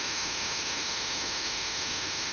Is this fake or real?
fake